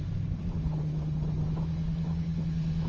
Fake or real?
real